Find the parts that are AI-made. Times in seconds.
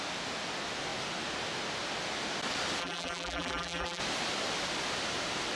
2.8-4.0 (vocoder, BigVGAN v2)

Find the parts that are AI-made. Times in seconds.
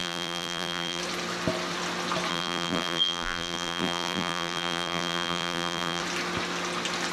0.0-1.0 (vocoder, BigVGAN v2); 2.3-6.0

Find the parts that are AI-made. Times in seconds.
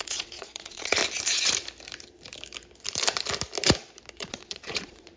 0.0-1.0 (vocoder, Vocos); 4.1-5.2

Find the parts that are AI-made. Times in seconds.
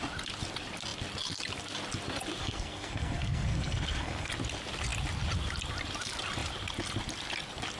2.4-4.3 (codec, SNAC)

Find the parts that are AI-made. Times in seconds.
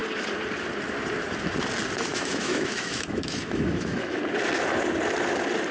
2.1-4.2 (autoencoder, DAC-VAE)